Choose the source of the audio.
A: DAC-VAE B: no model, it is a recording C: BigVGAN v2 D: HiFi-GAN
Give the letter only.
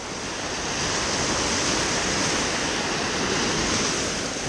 B